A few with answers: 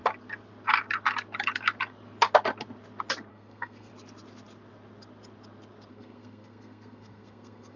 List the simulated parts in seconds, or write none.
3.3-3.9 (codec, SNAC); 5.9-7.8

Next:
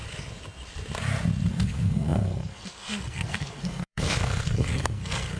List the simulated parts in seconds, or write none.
1.5-5.4 (codec, SNAC)